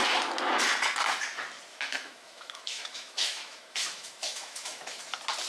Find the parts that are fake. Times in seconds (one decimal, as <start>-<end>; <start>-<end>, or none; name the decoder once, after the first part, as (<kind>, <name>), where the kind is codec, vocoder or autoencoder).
1.7-5.0 (autoencoder, DAC-VAE)